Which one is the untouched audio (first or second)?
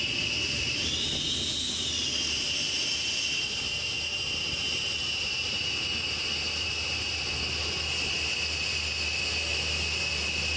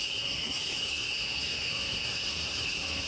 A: first